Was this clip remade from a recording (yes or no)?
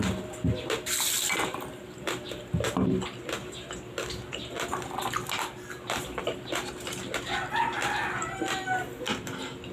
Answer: no